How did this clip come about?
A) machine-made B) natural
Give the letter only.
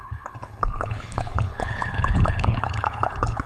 A